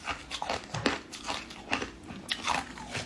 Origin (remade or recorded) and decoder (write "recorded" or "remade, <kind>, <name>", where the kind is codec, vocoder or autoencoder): recorded